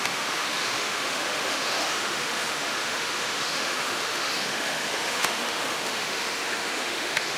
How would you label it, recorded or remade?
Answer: remade